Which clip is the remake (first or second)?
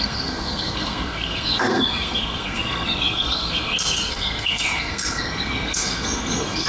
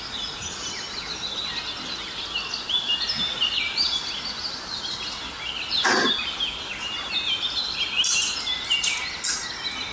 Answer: first